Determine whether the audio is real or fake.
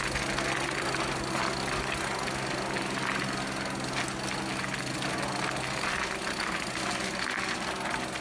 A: real